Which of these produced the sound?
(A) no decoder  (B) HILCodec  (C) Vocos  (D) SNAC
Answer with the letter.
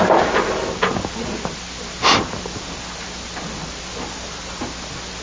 A